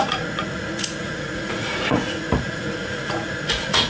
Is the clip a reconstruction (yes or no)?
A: yes